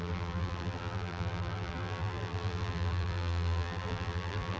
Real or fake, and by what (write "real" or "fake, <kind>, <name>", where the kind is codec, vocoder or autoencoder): fake, vocoder, BigVGAN v2